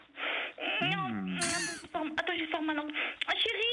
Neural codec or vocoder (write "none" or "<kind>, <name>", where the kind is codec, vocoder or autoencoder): none